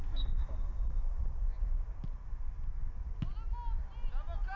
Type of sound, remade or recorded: recorded